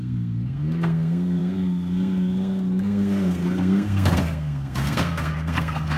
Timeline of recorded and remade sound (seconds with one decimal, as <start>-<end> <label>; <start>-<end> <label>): 0.0-6.0 remade